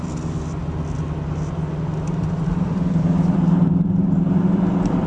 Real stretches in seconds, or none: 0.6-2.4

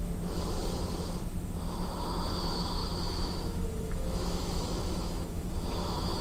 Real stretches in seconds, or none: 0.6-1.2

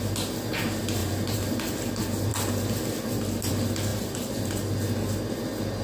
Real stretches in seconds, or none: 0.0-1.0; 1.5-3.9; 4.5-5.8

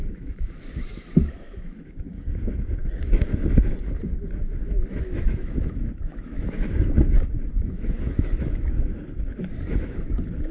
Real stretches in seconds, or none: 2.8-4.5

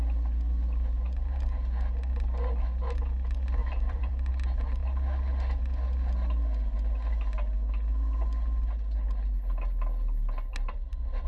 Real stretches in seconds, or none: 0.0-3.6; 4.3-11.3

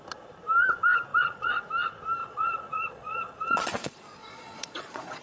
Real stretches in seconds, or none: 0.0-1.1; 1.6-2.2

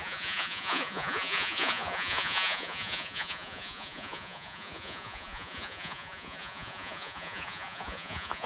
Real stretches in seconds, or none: none